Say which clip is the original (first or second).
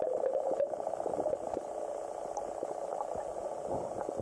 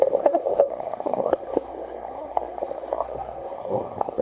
first